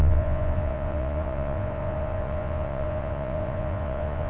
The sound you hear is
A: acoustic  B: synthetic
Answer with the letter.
B